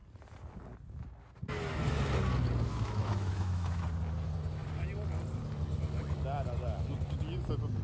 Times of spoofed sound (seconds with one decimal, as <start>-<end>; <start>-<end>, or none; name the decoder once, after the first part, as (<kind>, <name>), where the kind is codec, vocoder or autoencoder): 2.7-3.8 (autoencoder, DAC-VAE)